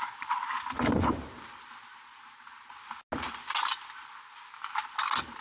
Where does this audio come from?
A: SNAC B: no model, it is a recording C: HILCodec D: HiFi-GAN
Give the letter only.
B